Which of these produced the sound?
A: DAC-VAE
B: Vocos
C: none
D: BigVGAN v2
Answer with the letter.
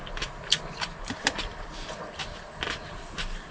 D